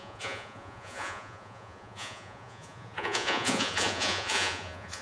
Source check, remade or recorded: remade